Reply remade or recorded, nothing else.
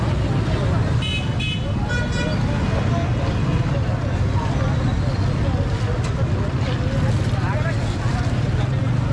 recorded